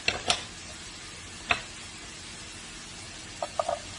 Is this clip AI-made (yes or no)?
no